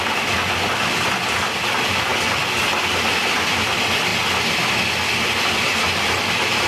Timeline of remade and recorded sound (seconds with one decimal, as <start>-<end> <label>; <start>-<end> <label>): 0.0-4.1 remade; 4.1-5.4 recorded; 5.4-6.7 remade